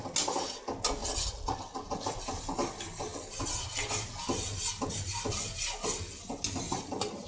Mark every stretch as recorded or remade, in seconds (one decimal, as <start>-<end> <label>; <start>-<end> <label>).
0.0-7.3 recorded

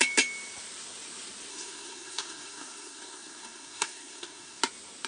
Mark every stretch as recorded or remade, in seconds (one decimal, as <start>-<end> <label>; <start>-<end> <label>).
0.0-1.5 recorded; 1.5-4.6 remade; 4.6-5.1 recorded

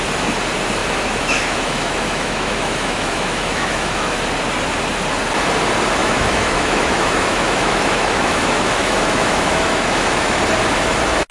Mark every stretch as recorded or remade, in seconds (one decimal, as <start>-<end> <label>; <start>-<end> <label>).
0.0-0.8 recorded; 0.8-4.2 remade; 4.2-6.0 recorded; 6.0-10.4 remade; 10.4-11.3 recorded

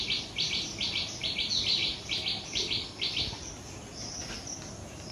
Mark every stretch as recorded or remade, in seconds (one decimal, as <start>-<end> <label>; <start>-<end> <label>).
0.0-5.1 recorded

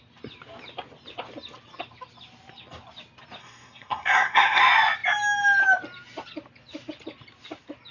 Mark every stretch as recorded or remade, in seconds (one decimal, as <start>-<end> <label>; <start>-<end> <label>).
0.0-3.4 recorded; 3.4-4.6 remade; 4.6-7.9 recorded

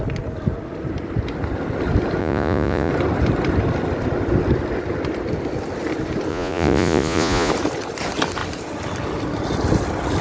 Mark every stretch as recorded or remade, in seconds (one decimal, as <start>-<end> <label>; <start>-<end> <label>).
0.0-2.2 recorded; 2.2-2.9 remade; 2.9-6.3 recorded; 6.3-7.5 remade; 7.5-10.2 recorded